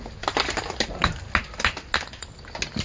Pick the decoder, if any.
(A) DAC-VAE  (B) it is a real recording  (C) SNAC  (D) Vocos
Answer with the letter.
B